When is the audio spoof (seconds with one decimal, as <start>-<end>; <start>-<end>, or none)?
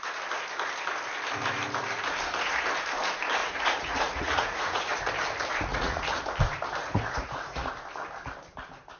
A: 3.4-4.9; 5.7-6.2; 6.8-7.7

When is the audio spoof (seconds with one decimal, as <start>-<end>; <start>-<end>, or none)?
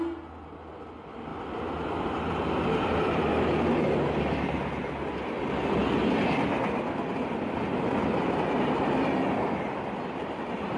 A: 1.3-3.3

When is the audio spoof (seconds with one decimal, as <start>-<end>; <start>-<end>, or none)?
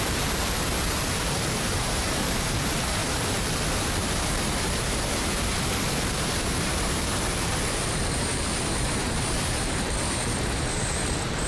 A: 0.0-11.5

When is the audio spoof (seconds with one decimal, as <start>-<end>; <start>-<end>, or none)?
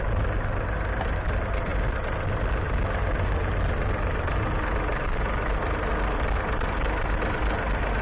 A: none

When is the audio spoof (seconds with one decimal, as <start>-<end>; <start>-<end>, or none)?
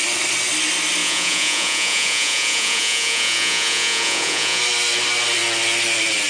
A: 1.0-4.6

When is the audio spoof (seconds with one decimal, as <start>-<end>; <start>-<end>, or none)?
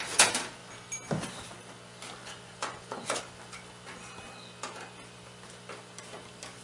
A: 2.2-3.2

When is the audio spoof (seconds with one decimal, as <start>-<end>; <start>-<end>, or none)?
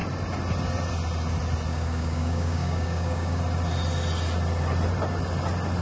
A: 1.7-3.4